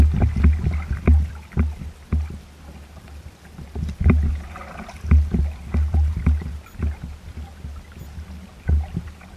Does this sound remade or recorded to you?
recorded